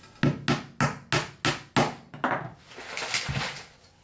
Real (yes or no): yes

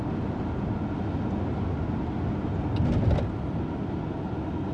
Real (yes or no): yes